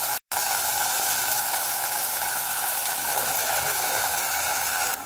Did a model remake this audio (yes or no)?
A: yes